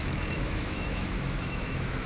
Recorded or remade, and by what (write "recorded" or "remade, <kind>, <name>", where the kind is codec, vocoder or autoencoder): remade, autoencoder, DAC-VAE